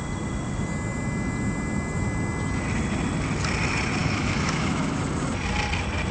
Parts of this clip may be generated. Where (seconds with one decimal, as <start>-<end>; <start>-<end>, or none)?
4.0-5.0